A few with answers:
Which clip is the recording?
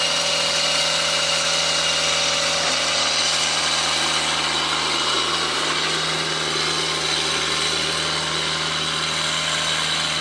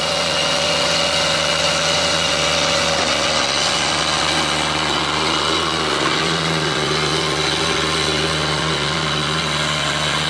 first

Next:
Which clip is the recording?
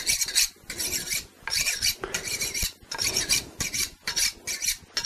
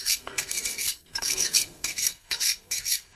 first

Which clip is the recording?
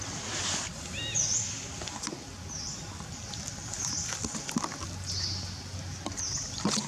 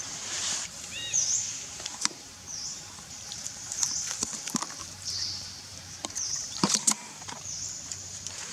first